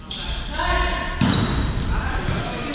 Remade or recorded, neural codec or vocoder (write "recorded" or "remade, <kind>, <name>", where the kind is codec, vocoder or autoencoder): recorded